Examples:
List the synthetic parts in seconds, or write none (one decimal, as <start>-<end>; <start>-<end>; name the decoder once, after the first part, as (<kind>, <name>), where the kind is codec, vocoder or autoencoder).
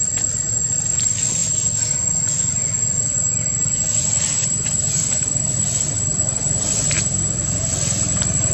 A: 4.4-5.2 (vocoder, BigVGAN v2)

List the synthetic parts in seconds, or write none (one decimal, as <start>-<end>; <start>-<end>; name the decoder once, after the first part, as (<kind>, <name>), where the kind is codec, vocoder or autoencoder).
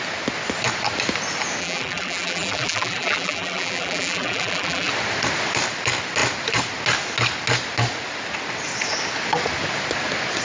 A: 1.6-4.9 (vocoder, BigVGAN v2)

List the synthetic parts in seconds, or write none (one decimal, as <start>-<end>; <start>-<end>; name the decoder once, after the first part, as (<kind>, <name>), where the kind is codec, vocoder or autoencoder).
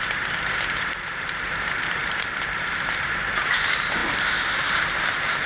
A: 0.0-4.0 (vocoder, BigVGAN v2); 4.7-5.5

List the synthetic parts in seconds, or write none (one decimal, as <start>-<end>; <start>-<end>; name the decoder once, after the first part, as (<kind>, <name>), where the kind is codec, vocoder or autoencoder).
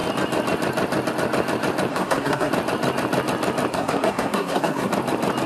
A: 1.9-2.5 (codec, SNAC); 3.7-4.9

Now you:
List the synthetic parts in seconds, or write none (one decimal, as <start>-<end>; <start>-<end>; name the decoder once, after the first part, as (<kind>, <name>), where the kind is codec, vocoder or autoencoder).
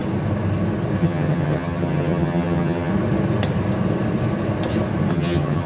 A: 1.0-2.9 (vocoder, HiFi-GAN); 5.1-5.7